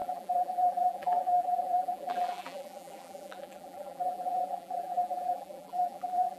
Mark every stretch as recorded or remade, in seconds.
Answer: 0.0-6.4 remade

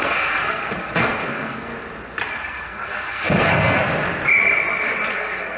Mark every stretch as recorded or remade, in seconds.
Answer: 0.0-1.7 remade; 1.7-2.3 recorded; 2.3-3.9 remade; 3.9-5.1 recorded; 5.1-5.6 remade

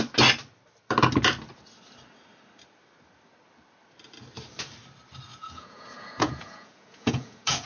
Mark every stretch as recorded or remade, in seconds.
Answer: 0.0-5.3 recorded; 5.3-7.7 remade

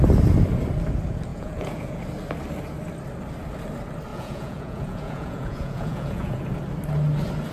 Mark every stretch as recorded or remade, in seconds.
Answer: 0.0-1.3 recorded; 1.3-2.0 remade; 2.0-4.1 recorded; 4.1-6.5 remade; 6.5-7.5 recorded

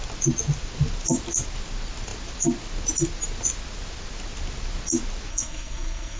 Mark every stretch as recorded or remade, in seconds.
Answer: 0.0-5.3 recorded; 5.3-6.2 remade

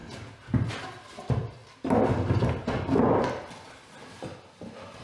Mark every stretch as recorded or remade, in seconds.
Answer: 0.0-5.0 recorded

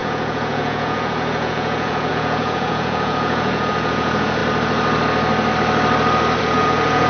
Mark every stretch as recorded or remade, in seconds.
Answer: 0.0-4.4 remade; 4.4-6.4 recorded; 6.4-7.1 remade

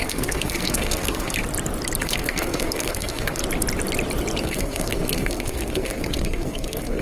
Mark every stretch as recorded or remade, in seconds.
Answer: 0.0-1.4 remade; 1.4-2.0 recorded; 2.0-3.4 remade; 3.4-4.4 recorded; 4.4-7.0 remade